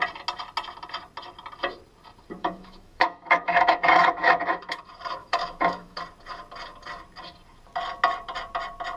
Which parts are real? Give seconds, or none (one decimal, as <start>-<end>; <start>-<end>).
0.0-2.4; 4.8-5.2; 6.0-9.0